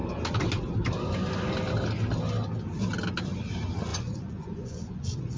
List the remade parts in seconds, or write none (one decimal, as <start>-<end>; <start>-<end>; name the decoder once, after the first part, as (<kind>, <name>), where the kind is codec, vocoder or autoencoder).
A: 3.9-5.4 (vocoder, Vocos)